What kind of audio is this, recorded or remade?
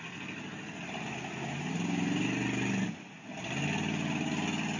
recorded